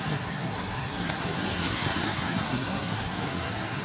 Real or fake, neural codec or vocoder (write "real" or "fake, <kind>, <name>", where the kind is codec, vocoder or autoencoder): fake, codec, SNAC